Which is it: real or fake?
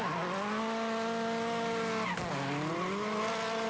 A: real